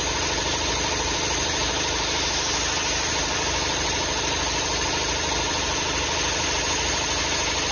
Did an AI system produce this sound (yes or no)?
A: no